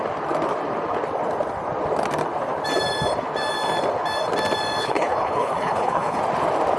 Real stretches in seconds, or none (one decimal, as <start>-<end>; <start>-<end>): 0.0-4.8; 6.2-6.8